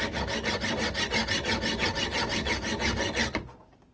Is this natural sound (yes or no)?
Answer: yes